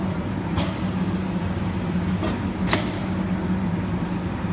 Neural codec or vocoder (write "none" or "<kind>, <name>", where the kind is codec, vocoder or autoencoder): none